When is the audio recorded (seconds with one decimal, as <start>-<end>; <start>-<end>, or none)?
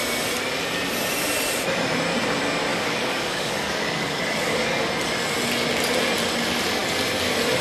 0.0-2.7; 4.8-7.6